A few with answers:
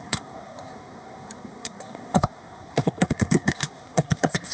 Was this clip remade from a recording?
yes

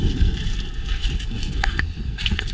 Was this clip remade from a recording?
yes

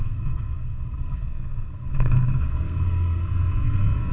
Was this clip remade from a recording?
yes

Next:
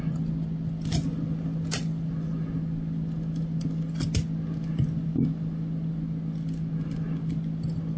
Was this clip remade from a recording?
no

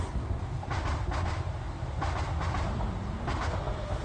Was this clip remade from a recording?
no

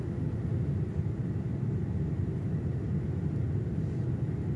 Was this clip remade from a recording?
no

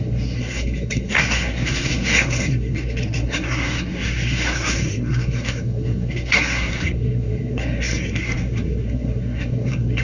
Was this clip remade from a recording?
yes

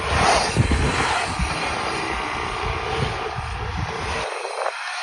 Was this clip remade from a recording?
no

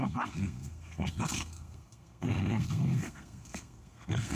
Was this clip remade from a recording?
yes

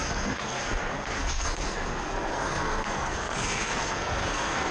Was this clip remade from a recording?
yes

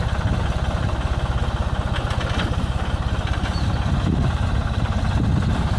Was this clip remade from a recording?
no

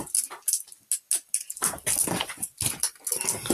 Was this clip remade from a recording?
no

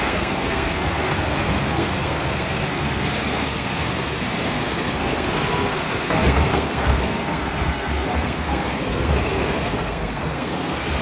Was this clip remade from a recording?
yes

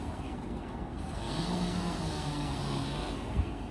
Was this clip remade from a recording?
yes